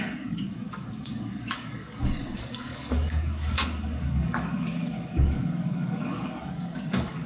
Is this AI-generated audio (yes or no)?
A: yes